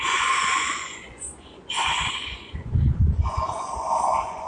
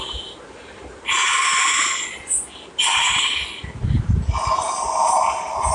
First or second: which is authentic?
second